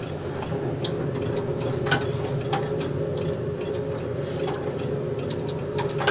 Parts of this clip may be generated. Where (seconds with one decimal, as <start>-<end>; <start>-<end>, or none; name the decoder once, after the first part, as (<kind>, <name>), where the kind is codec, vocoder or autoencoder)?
none